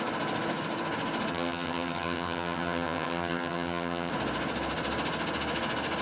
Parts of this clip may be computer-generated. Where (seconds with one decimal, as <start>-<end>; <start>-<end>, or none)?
1.3-4.1